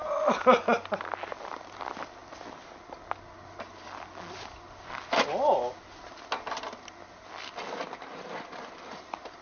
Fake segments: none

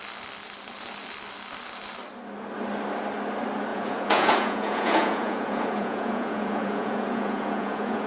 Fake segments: 3.7-8.1

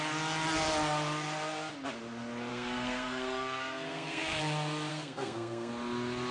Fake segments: 2.5-4.4; 4.9-5.7

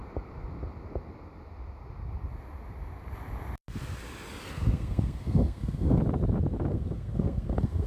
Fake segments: 4.5-6.0; 6.7-7.9

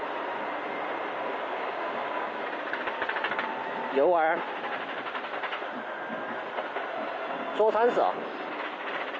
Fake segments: 1.3-2.4

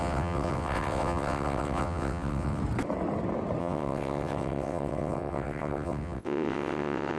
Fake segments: 0.0-2.6; 3.6-7.2

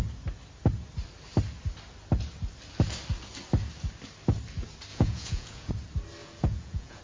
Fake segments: 4.9-5.7; 6.2-7.0